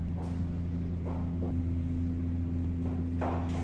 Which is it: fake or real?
real